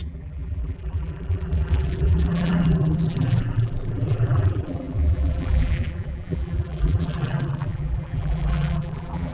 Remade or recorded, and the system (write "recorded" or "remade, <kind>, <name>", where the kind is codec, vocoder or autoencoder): remade, vocoder, BigVGAN v2